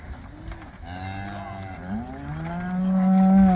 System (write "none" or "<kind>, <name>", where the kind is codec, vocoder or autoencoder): none